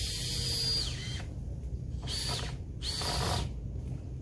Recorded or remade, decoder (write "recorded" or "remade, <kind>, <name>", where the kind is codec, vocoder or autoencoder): recorded